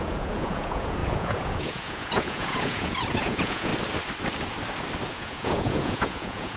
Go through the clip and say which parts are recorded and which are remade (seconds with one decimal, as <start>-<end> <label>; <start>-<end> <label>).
0.0-3.7 remade; 3.7-5.1 recorded; 5.1-6.6 remade

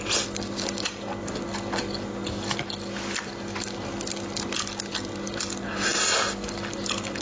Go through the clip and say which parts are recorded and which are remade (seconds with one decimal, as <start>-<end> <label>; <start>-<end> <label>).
0.0-7.2 recorded